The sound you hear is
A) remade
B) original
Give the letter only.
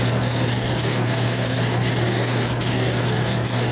A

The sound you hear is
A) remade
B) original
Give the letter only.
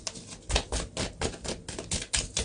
B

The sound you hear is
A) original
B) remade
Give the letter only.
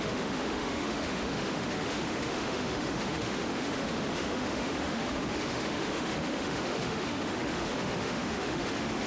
B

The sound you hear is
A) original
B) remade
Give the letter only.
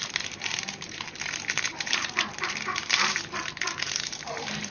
B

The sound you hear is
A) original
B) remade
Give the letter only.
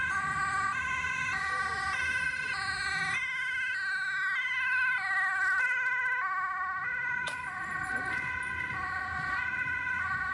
A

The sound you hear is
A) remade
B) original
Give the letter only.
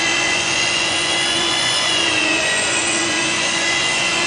A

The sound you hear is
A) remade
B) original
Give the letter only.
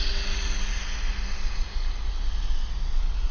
B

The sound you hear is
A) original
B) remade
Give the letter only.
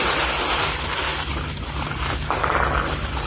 A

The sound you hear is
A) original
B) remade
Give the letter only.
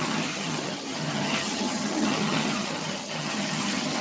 B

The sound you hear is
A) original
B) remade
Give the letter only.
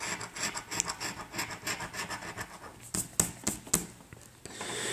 A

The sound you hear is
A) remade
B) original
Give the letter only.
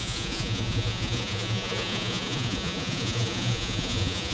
A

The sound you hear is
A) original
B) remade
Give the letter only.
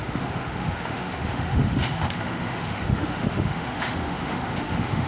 B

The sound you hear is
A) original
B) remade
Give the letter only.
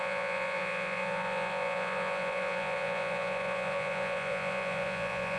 B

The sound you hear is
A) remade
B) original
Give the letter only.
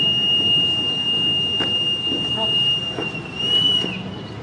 B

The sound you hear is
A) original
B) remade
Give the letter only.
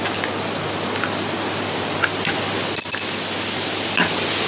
A